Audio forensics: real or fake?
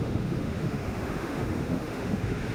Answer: fake